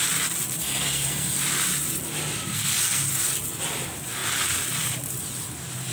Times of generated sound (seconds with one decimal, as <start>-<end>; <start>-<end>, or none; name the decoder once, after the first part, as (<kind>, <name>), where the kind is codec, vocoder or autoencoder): 0.6-1.4 (codec, SNAC); 2.5-3.1